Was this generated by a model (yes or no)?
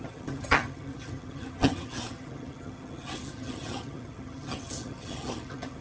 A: yes